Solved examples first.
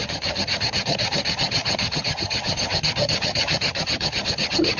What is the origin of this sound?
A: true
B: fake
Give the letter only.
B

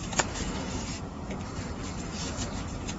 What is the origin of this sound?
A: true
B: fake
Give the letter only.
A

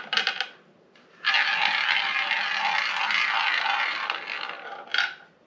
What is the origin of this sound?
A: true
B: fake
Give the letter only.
A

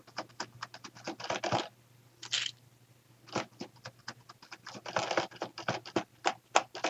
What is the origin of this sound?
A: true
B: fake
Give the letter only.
A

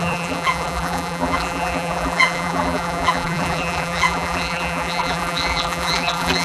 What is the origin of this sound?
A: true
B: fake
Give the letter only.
B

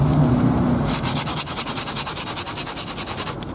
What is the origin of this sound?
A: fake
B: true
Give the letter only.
B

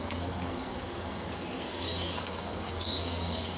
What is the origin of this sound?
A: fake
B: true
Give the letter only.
A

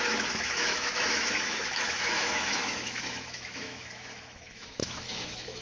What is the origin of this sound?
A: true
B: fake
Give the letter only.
B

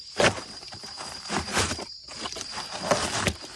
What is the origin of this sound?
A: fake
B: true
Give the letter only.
B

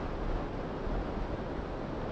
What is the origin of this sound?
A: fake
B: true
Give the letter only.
B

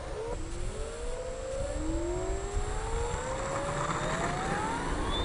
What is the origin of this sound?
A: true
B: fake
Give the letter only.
A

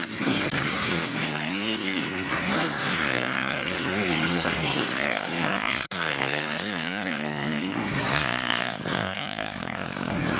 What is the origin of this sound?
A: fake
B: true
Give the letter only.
A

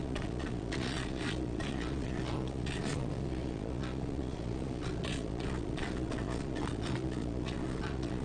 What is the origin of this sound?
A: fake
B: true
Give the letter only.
A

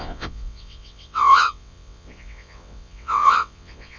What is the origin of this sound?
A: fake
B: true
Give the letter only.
A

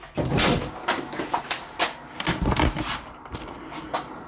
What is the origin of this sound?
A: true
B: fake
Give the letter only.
A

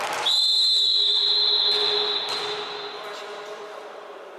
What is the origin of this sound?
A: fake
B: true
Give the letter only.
B